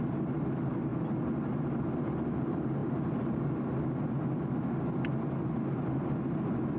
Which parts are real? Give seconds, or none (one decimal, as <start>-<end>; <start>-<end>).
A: 0.0-2.8; 3.4-6.8